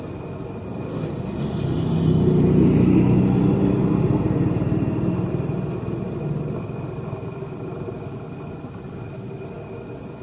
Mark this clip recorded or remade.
recorded